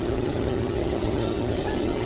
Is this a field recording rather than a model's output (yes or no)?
no